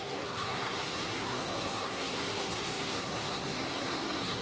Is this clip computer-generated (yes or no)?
yes